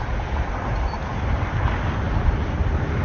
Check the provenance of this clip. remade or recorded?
recorded